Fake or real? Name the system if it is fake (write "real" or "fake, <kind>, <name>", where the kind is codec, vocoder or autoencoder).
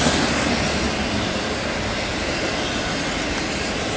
real